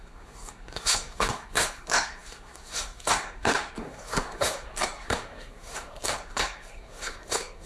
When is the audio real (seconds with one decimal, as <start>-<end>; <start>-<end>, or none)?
none